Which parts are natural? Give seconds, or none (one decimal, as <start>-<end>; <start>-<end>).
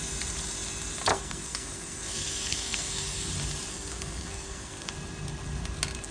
0.0-1.1; 3.3-3.7; 4.9-6.1